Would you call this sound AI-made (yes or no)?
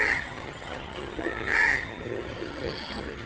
yes